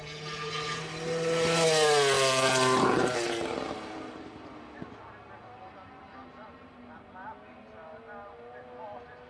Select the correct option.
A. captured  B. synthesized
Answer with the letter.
A